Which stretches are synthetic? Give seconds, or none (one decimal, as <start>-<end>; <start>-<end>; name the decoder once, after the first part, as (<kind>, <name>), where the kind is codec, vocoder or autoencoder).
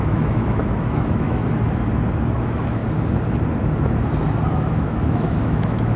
0.0-1.4 (autoencoder, DAC-VAE); 2.2-2.8; 4.5-6.0